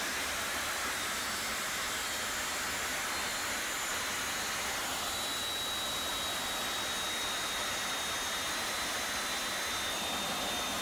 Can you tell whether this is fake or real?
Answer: real